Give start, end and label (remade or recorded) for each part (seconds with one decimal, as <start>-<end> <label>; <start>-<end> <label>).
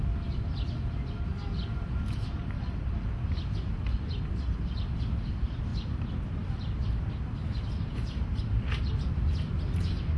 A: 0.0-7.4 recorded; 7.4-8.8 remade; 8.8-10.2 recorded